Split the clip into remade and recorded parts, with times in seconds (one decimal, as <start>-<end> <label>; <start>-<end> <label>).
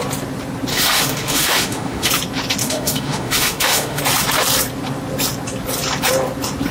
0.0-0.7 recorded; 0.7-2.1 remade; 2.1-2.6 recorded; 2.6-4.0 remade; 4.0-6.7 recorded